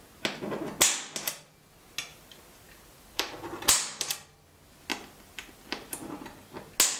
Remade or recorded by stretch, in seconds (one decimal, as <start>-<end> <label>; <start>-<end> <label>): 0.0-2.1 recorded; 2.1-4.1 remade; 4.1-4.9 recorded; 4.9-6.1 remade; 6.1-7.0 recorded